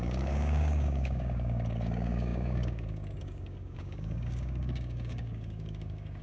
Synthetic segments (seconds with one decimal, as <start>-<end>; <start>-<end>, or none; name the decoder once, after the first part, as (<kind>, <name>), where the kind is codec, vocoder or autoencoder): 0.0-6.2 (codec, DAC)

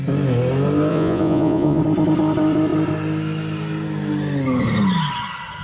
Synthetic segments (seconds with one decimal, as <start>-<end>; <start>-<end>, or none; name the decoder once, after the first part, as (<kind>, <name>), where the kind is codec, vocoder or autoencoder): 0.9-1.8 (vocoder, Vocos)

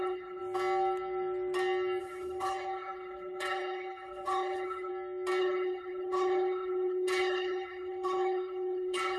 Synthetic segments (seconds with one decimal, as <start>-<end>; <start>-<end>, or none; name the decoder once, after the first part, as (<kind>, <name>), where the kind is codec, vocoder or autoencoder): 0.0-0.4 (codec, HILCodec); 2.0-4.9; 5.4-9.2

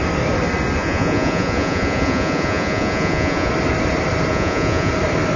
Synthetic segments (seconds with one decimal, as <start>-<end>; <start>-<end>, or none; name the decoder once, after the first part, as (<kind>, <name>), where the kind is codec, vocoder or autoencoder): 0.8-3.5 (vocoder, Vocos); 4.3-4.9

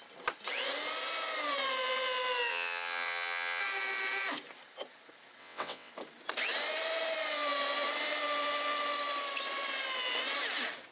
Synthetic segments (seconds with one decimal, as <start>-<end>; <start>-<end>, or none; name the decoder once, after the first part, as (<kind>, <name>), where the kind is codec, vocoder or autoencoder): 2.5-3.6 (vocoder, WaveNeXt); 5.4-5.9

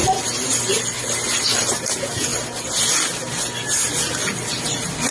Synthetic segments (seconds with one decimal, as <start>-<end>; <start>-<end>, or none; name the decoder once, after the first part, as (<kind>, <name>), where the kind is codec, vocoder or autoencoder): 1.9-2.3 (vocoder, Vocos)